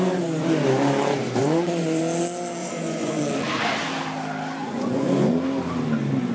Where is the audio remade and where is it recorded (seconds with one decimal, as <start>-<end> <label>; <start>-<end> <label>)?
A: 0.0-1.4 recorded; 1.4-2.0 remade; 2.0-2.6 recorded; 2.6-3.2 remade; 3.2-4.6 recorded; 4.6-5.3 remade; 5.3-6.3 recorded